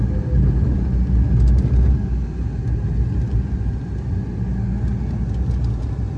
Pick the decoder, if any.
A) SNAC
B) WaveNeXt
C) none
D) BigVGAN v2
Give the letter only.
C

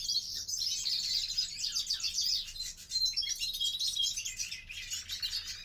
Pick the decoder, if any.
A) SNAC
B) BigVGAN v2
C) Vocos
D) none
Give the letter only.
D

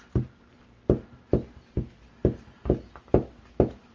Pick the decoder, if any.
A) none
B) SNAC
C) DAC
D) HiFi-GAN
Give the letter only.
A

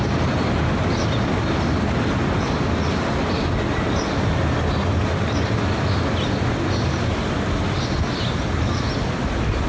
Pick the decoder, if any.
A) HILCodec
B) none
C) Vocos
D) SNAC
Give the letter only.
B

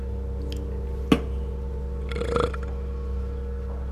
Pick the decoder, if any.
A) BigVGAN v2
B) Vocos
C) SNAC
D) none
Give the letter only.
D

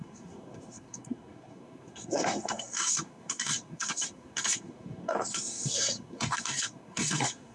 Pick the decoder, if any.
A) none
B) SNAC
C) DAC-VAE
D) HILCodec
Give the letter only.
B